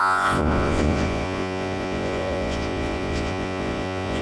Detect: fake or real fake